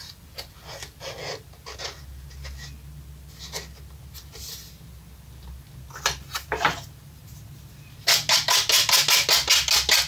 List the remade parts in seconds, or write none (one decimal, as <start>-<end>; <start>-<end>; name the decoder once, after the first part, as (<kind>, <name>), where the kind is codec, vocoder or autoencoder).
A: none